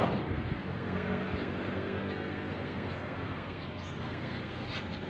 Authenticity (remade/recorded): remade